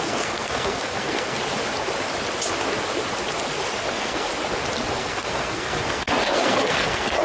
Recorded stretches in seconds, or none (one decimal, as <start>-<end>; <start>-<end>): 1.4-3.9; 4.3-4.9